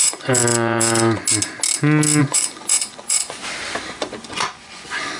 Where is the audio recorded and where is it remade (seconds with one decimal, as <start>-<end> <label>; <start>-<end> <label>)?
0.0-1.2 remade; 1.2-2.2 recorded; 2.2-3.4 remade; 3.4-3.9 recorded; 3.9-5.2 remade